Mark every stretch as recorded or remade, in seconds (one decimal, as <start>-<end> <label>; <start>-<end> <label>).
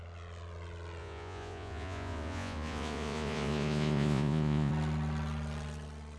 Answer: 0.0-1.0 recorded; 1.0-4.7 remade; 4.7-6.2 recorded